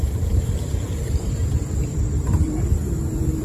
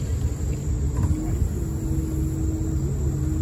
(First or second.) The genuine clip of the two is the second